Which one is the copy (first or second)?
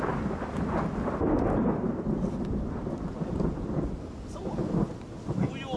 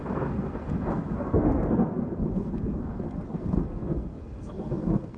second